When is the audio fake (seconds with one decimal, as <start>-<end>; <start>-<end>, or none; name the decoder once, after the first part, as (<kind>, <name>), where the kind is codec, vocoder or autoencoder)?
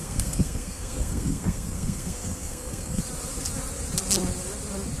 0.0-3.0 (codec, SNAC)